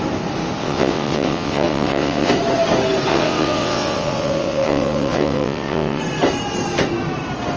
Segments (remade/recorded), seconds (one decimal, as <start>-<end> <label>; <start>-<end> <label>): 0.0-0.6 recorded; 0.6-2.3 remade; 2.3-3.1 recorded; 3.1-6.0 remade; 6.0-7.6 recorded